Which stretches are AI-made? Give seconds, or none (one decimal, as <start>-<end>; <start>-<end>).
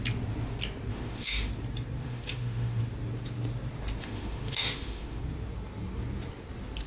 0.9-1.5; 2.0-2.8; 4.0-5.2